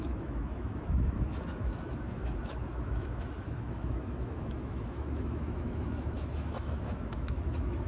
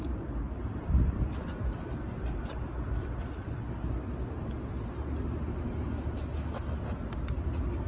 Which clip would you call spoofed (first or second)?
first